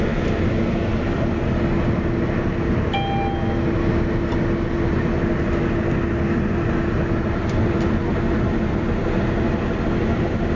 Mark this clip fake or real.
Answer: real